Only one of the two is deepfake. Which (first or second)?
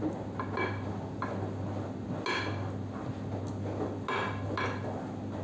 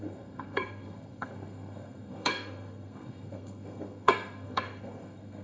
second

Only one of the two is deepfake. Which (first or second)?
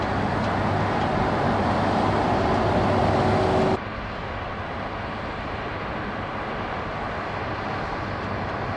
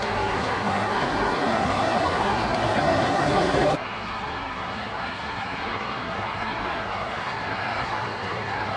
second